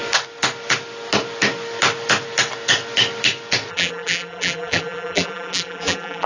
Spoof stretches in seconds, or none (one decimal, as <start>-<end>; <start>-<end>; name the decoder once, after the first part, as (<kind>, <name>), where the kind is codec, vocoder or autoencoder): 3.7-6.3 (vocoder, BigVGAN v2)